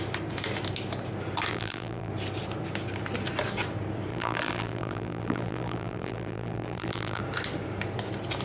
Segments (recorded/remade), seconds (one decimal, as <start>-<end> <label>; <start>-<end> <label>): 0.0-1.5 recorded; 1.5-2.1 remade; 2.1-4.1 recorded; 4.1-7.2 remade; 7.2-8.4 recorded